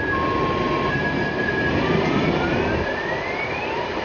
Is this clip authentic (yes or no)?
yes